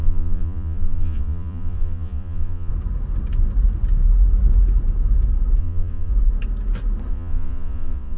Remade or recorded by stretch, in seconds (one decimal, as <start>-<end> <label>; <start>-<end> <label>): 0.0-2.7 remade; 2.7-5.6 recorded; 5.6-6.1 remade; 6.1-7.1 recorded; 7.1-8.2 remade